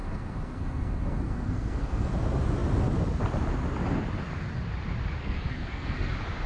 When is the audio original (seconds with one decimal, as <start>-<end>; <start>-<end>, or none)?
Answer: 2.1-5.2; 6.1-6.5